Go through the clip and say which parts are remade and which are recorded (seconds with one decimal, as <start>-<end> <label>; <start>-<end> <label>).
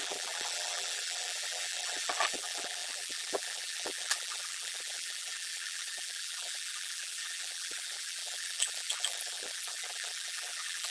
0.0-10.9 remade